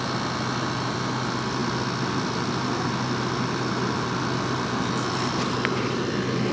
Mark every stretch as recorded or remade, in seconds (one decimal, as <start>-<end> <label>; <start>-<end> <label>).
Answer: 0.0-6.5 recorded